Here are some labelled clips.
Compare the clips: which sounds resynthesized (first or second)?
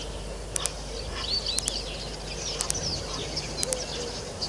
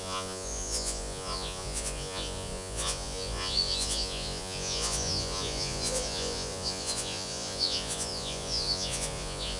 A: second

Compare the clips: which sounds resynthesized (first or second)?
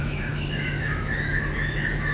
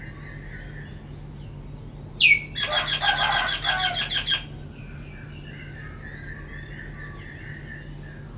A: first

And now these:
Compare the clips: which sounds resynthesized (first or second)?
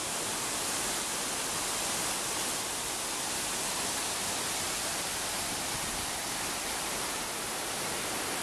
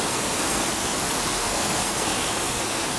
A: second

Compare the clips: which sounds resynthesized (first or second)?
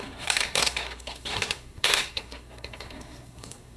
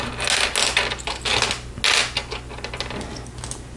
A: first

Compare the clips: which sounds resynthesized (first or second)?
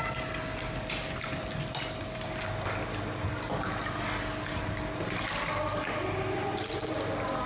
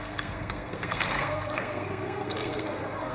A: second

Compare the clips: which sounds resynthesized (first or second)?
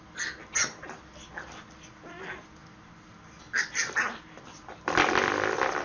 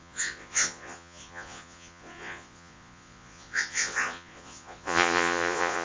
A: second